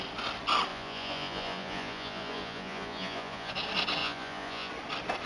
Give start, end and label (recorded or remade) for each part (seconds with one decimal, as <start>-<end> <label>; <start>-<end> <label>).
0.0-0.7 recorded; 0.7-3.5 remade; 3.5-4.0 recorded; 4.0-4.7 remade; 4.7-5.3 recorded